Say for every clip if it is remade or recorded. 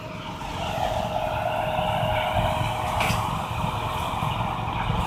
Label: recorded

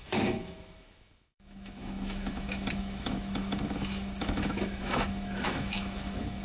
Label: remade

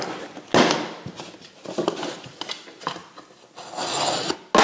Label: recorded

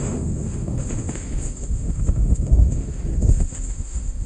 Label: remade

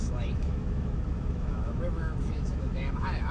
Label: remade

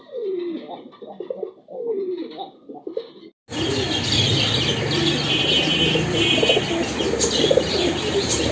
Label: recorded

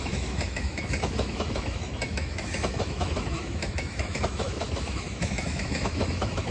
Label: remade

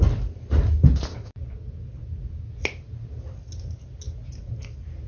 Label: recorded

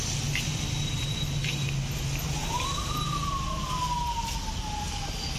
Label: recorded